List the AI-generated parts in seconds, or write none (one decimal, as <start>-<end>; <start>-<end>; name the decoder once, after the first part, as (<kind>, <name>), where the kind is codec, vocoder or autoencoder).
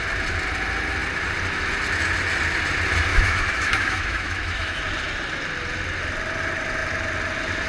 3.1-4.8 (autoencoder, DAC-VAE)